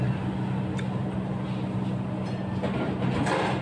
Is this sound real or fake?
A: real